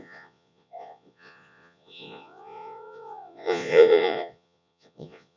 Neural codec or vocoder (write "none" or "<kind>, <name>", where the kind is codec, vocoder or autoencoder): vocoder, Vocos